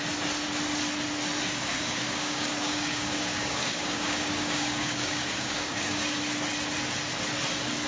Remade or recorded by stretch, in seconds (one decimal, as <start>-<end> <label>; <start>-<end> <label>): 0.0-1.5 recorded; 1.5-6.2 remade; 6.2-7.9 recorded